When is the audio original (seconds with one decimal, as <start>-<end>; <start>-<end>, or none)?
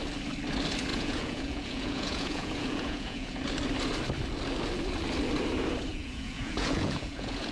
0.0-0.9; 3.4-5.9